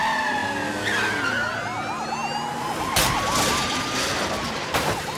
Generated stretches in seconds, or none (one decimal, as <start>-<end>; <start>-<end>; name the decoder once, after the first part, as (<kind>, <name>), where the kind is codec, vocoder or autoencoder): none